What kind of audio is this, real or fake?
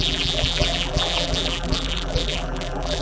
fake